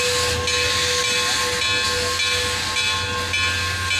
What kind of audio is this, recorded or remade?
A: recorded